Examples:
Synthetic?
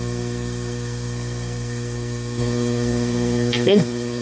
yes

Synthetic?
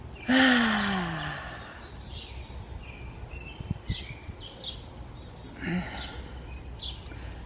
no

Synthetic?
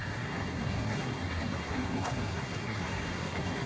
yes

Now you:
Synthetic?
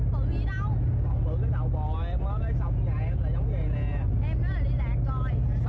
no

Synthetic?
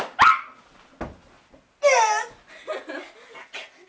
no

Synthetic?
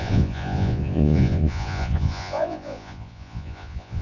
yes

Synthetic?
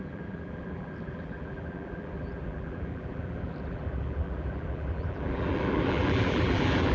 yes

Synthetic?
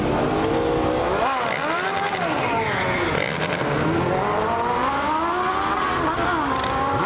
no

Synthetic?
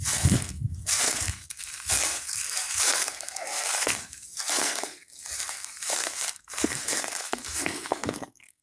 yes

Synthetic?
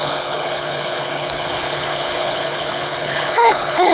yes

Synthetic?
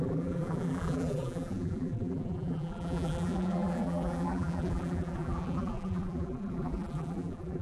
yes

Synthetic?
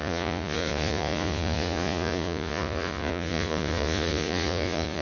yes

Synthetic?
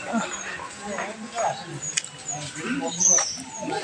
no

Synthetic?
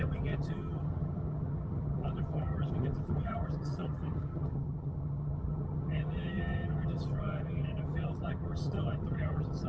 yes